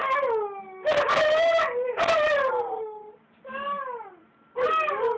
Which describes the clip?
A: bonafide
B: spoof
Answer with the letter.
A